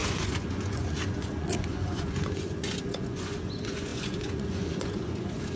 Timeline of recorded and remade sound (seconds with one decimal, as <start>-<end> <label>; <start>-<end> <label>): 0.0-5.6 remade